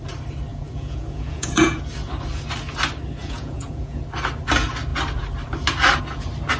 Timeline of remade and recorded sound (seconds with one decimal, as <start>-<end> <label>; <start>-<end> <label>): 0.0-0.5 recorded; 0.5-1.8 remade; 1.8-3.2 recorded; 3.2-4.0 remade; 4.0-6.6 recorded